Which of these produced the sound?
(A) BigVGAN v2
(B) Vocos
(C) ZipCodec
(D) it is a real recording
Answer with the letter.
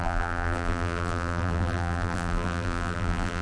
A